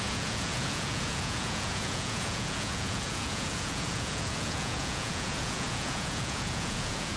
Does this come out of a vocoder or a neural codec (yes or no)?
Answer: yes